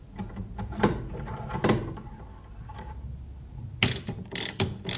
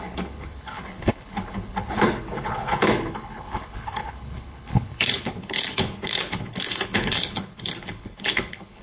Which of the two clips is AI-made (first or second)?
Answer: second